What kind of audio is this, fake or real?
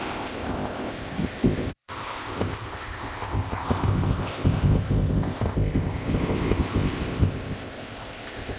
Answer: fake